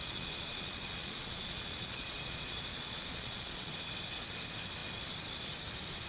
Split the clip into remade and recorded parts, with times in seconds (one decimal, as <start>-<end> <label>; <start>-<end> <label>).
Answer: 0.0-3.7 remade; 3.7-6.1 recorded